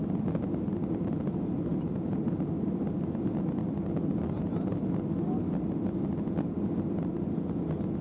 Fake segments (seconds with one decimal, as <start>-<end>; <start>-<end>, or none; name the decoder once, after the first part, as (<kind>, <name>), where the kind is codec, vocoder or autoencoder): none